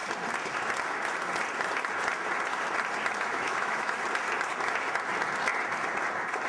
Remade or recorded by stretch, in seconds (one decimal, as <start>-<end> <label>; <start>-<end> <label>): 0.0-3.3 recorded; 3.3-4.0 remade; 4.0-6.5 recorded